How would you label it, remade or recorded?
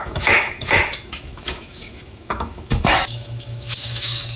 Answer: remade